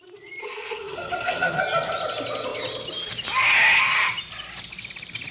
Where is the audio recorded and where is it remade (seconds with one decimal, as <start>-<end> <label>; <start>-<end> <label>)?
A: 0.0-0.4 recorded; 0.4-1.6 remade; 1.6-5.3 recorded